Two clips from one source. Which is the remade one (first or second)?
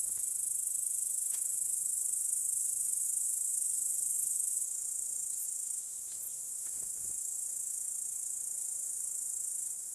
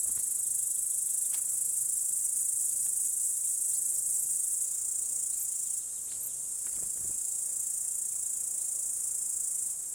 first